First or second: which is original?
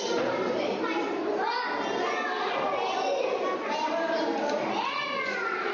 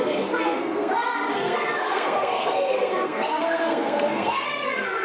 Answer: first